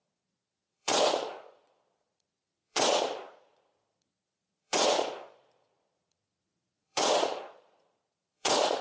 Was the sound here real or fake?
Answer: fake